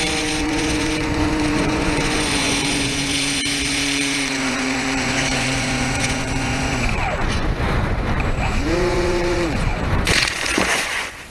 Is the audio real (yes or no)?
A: no